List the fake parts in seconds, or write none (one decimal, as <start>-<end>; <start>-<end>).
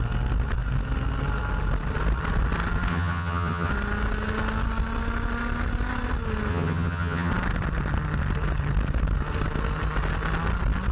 2.9-3.7; 6.5-7.3